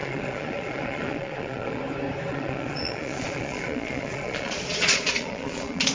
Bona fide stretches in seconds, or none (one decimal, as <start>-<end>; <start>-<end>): 1.8-2.3